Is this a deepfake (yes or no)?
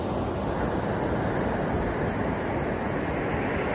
no